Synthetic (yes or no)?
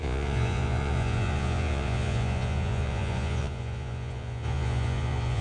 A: yes